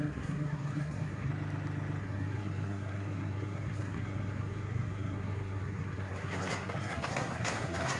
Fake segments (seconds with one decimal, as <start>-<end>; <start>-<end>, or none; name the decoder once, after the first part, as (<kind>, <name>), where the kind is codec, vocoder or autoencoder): 0.0-1.3 (codec, SNAC); 2.0-8.0